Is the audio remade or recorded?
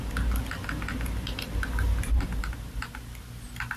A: recorded